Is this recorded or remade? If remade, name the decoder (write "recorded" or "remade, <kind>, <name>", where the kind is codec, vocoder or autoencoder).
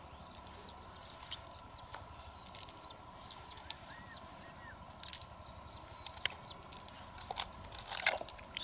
recorded